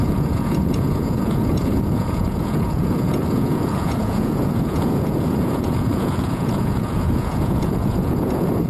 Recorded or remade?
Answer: remade